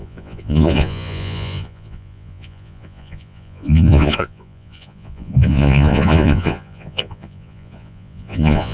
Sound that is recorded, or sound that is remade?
remade